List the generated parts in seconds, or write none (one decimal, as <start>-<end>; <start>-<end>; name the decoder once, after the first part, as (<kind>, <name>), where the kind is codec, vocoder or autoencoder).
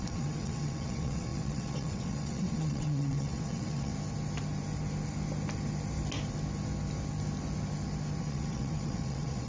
0.0-3.9 (vocoder, WaveNeXt); 8.2-9.5